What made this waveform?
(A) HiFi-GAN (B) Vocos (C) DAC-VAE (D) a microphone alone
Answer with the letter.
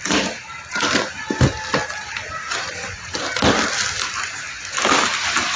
D